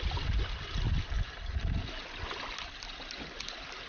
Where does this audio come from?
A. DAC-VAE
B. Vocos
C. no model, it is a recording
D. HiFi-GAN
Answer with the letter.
C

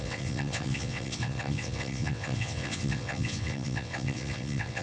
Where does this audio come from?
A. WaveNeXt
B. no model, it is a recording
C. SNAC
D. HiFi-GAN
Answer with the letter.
A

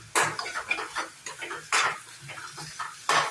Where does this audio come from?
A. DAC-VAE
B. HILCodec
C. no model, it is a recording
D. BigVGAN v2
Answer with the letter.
C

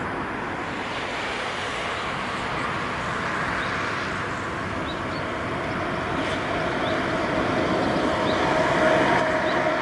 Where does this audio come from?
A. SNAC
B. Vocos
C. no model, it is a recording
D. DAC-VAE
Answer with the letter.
C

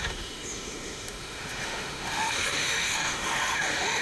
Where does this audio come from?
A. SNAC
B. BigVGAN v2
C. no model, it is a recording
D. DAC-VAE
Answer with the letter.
D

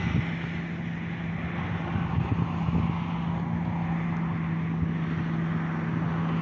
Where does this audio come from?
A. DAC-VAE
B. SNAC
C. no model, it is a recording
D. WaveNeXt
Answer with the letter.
C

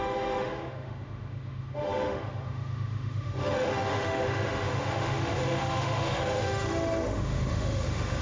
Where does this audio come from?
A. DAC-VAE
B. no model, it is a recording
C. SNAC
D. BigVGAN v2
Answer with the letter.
A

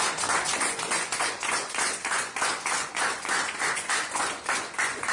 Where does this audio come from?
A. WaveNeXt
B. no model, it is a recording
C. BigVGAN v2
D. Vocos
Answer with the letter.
D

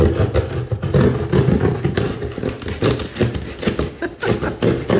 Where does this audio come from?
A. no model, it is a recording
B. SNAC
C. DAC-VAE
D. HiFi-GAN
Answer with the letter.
A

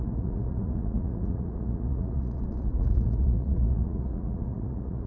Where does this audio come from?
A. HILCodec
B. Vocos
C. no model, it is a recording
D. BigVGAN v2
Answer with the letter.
B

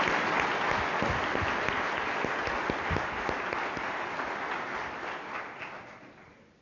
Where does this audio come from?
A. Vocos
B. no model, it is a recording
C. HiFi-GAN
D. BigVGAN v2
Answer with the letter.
B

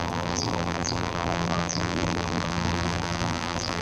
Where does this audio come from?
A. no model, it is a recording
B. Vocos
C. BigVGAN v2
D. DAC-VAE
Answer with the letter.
C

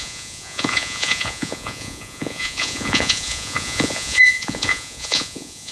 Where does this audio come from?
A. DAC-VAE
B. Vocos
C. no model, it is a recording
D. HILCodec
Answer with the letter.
B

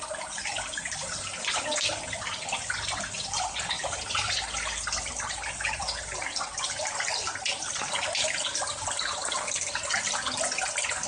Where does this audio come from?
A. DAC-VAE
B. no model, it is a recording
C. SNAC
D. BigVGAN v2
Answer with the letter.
B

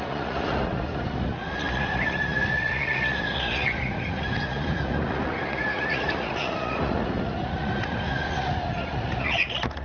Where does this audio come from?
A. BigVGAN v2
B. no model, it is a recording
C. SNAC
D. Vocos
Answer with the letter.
D